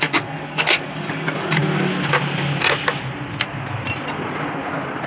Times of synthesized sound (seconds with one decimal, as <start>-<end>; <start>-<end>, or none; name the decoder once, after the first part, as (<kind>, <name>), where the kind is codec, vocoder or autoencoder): 0.0-1.6 (codec, DAC)